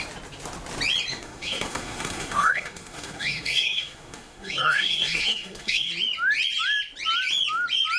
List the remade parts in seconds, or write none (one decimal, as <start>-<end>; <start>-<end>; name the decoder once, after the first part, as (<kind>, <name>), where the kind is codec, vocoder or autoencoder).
1.1-5.9 (codec, SNAC)